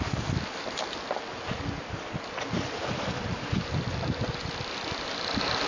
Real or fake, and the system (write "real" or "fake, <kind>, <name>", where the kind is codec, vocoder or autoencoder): real